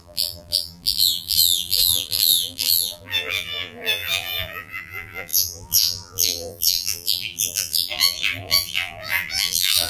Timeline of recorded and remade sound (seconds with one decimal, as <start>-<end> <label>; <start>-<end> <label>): 0.0-9.9 remade